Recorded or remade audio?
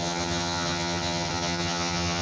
remade